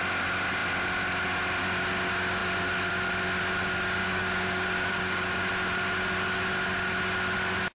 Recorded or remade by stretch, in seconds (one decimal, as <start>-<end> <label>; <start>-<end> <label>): 0.0-4.0 recorded; 4.0-5.4 remade; 5.4-7.7 recorded

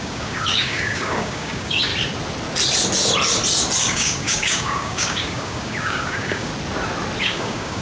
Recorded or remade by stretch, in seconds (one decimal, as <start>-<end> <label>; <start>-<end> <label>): 0.0-1.9 remade; 1.9-3.8 recorded; 3.8-6.5 remade; 6.5-7.2 recorded; 7.2-7.8 remade

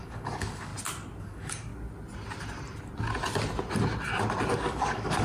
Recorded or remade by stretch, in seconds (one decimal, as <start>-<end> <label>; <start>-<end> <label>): 0.0-0.7 remade; 0.7-1.2 recorded; 1.2-1.7 remade; 1.7-4.5 recorded; 4.5-5.2 remade

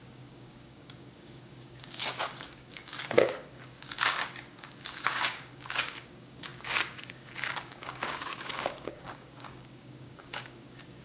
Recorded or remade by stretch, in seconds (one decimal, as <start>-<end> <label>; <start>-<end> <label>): 0.0-11.0 remade

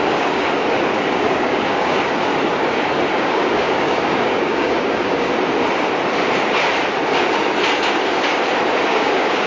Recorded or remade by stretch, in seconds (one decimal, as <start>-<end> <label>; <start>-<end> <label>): 0.0-2.3 remade; 2.3-3.1 recorded; 3.1-5.3 remade; 5.3-8.9 recorded; 8.9-9.5 remade

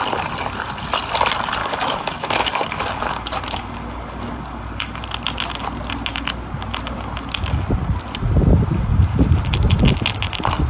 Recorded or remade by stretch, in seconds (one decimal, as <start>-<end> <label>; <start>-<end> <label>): 0.0-1.6 recorded; 1.6-5.0 remade; 5.0-10.7 recorded